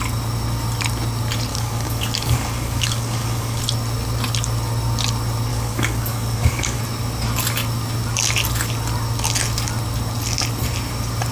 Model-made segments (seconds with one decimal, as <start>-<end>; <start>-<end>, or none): 1.5-3.6; 5.5-6.8